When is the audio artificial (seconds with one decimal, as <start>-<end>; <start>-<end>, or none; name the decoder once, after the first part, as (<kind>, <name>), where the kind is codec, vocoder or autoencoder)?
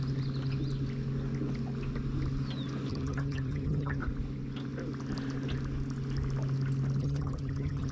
2.9-4.0 (vocoder, HiFi-GAN); 7.0-7.9